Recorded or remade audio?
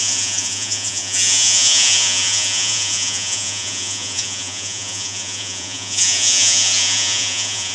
remade